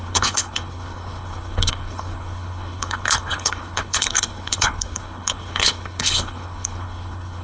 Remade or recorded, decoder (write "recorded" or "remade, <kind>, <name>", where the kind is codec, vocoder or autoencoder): remade, codec, HILCodec